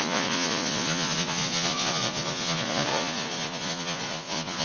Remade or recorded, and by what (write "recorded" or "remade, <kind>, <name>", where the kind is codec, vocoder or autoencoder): remade, vocoder, Vocos